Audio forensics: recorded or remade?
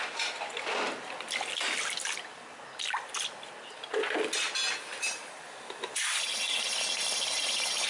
recorded